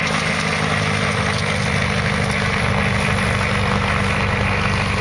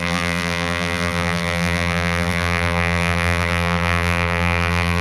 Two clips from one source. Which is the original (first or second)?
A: first